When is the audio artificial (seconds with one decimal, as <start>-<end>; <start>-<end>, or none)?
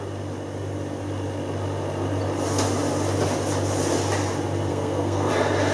4.7-5.3